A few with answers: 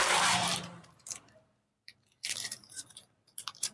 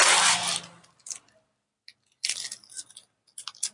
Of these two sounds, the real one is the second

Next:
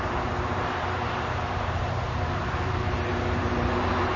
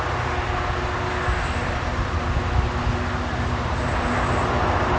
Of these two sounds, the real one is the second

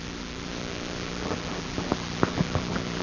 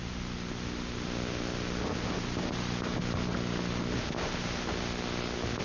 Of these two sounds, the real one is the second